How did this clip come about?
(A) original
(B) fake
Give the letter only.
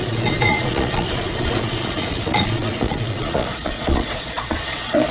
B